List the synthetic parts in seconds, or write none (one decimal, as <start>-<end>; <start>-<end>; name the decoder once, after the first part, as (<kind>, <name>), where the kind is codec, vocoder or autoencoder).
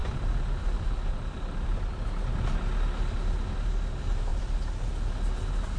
0.0-1.9 (vocoder, BigVGAN v2); 4.3-4.9